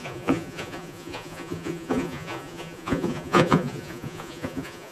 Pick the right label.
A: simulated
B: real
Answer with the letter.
A